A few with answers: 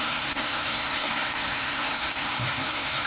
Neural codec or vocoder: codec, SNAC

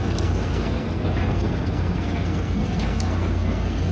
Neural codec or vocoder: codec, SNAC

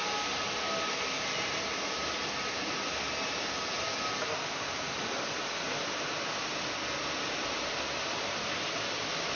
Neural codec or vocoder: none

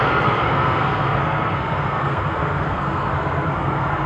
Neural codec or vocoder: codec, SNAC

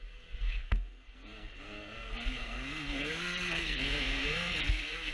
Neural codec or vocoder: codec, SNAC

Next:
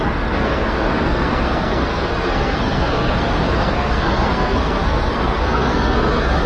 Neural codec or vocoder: codec, SNAC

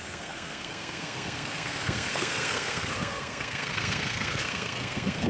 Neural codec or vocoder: codec, SNAC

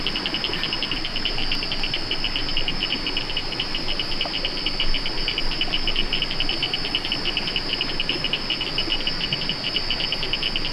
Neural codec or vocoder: none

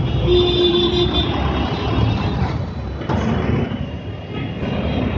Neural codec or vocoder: none